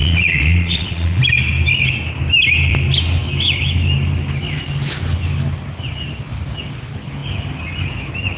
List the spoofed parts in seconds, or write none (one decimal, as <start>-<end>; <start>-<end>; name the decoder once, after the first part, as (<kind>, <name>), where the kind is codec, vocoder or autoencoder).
0.0-1.2 (vocoder, Vocos)